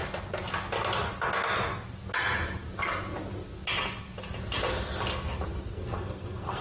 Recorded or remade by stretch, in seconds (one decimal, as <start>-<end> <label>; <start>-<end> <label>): 0.0-5.7 recorded; 5.7-6.6 remade